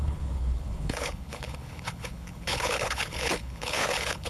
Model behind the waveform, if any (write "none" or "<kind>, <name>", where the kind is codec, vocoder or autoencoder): codec, HILCodec